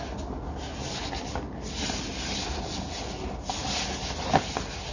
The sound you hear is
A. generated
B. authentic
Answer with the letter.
B